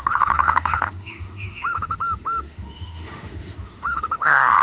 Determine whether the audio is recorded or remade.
remade